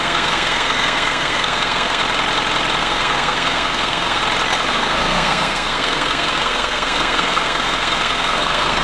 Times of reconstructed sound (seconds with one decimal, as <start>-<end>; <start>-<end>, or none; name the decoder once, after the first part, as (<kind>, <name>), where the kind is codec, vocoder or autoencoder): 0.0-2.0 (codec, SNAC); 2.8-4.2; 4.7-8.8